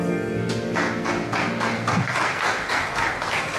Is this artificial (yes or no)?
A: yes